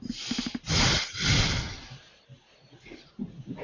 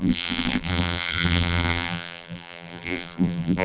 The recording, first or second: first